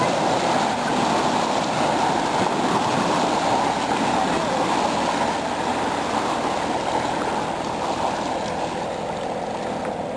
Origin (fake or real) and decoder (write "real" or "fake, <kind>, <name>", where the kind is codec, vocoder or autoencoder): real